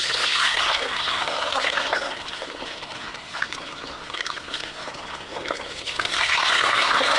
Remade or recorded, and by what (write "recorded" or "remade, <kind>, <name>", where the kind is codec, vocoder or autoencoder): remade, codec, SNAC